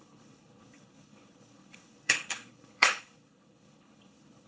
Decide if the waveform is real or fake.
fake